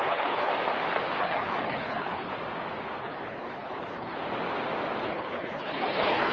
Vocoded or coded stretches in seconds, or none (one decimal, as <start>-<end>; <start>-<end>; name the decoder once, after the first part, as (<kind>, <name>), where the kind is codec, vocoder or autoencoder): 0.0-0.5 (codec, HILCodec); 1.2-2.3; 3.0-4.2; 5.0-6.3